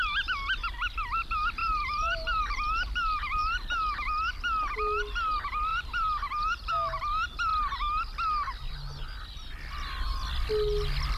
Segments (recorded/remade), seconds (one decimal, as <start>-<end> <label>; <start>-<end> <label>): 0.0-1.6 recorded; 1.6-2.4 remade; 2.4-5.7 recorded; 5.7-6.7 remade; 6.7-11.2 recorded